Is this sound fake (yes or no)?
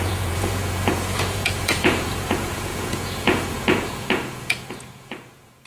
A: yes